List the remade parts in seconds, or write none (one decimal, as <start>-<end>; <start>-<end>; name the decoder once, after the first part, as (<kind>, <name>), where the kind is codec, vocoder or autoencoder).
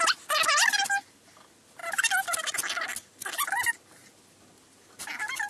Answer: none